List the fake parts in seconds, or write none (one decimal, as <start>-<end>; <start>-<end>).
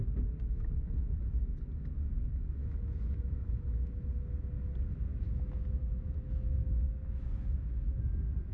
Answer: 2.6-3.9; 5.1-8.0